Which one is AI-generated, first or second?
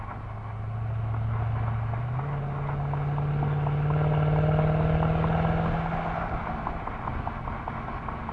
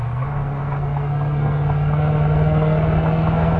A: second